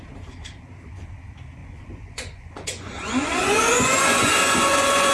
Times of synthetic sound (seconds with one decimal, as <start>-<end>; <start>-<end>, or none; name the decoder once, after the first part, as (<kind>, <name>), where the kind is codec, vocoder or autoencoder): 1.6-5.1 (vocoder, Vocos)

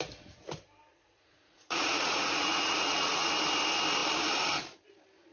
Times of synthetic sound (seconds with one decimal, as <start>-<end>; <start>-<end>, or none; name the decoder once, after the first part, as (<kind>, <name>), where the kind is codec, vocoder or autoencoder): 0.9-3.3 (vocoder, Vocos)

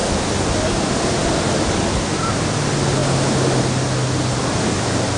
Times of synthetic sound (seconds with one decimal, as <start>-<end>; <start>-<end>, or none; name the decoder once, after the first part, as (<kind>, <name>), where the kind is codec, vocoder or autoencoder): none

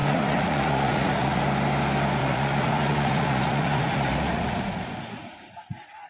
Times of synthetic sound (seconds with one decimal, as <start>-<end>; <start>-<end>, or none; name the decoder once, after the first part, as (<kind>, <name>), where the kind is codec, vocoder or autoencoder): 0.0-1.4 (vocoder, Vocos); 2.2-6.1

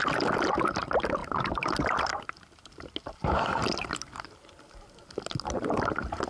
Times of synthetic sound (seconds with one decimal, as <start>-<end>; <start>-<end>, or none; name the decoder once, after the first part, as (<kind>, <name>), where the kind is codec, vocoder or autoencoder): none